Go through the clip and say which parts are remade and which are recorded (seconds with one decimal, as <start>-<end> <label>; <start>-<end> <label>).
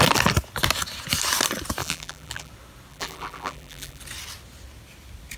0.0-1.8 recorded; 1.8-2.5 remade; 2.5-2.9 recorded; 2.9-4.0 remade; 4.0-5.4 recorded